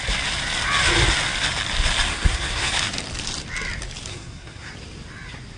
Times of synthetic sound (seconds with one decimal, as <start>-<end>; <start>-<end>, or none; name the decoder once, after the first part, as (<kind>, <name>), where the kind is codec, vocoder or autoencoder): 2.1-2.7 (codec, SNAC); 4.1-4.7